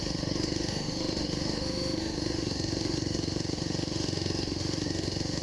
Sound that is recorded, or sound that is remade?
remade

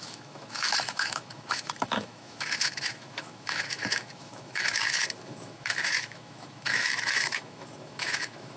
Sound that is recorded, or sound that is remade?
remade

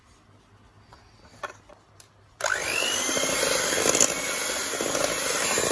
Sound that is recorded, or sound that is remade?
recorded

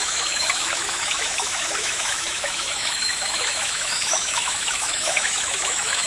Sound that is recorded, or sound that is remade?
remade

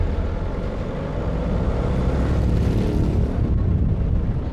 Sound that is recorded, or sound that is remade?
recorded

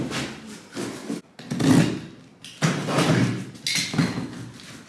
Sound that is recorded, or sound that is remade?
recorded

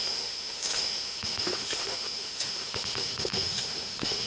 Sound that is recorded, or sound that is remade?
remade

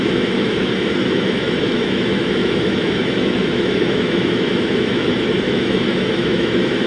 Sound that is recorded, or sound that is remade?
remade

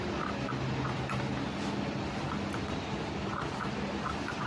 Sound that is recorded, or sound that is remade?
recorded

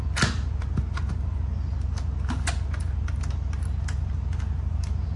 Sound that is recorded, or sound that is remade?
recorded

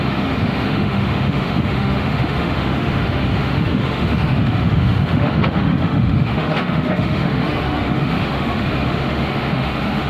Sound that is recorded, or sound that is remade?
remade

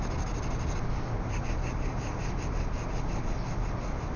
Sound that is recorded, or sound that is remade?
recorded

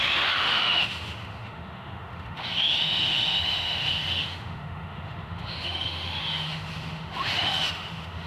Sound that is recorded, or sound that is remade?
remade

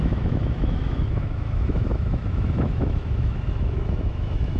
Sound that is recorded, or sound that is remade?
remade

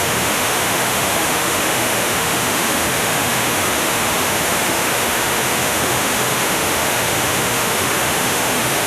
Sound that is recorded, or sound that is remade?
remade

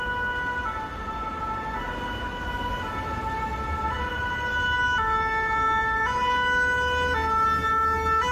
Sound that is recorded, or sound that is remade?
recorded